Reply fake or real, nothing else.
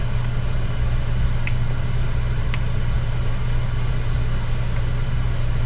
real